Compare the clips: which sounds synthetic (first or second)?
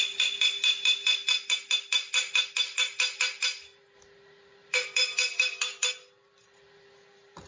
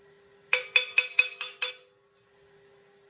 first